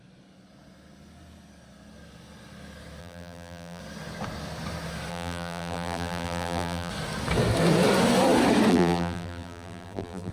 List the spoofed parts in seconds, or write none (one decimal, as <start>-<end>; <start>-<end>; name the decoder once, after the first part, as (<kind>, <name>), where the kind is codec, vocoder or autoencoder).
3.0-3.8 (vocoder, BigVGAN v2); 5.1-6.9; 8.7-10.3